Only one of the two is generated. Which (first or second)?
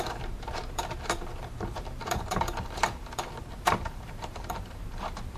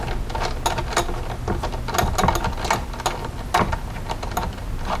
first